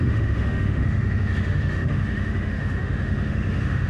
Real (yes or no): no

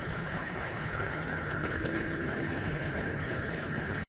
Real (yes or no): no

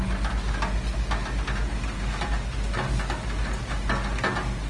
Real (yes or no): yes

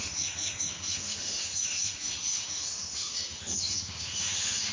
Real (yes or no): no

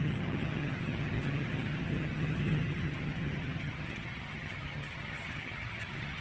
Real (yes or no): no